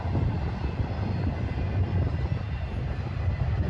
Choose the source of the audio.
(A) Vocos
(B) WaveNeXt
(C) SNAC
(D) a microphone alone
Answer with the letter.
D